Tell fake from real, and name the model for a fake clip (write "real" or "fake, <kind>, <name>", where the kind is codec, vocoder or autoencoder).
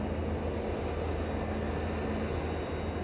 real